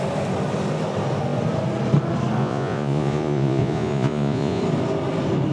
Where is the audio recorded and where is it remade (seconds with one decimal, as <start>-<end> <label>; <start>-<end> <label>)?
0.0-2.4 recorded; 2.4-4.6 remade; 4.6-5.5 recorded